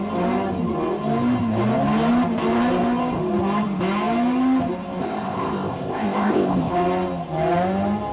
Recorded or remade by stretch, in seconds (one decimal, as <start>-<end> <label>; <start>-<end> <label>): 0.0-5.0 recorded; 5.0-6.7 remade; 6.7-8.1 recorded